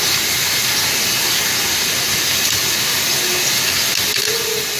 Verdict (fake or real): real